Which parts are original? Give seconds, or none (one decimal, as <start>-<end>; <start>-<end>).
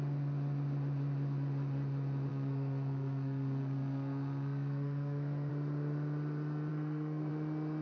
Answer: 0.0-2.3; 5.5-6.7; 7.3-7.8